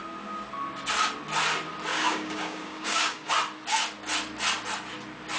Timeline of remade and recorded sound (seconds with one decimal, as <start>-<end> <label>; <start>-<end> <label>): 0.0-1.9 recorded; 1.9-3.3 remade; 3.3-5.4 recorded